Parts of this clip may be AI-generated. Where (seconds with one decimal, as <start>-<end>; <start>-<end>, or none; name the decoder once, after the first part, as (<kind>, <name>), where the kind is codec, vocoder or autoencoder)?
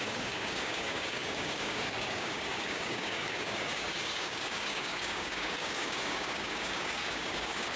0.0-7.8 (codec, DAC)